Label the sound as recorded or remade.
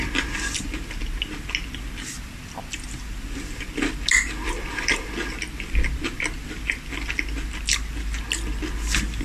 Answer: recorded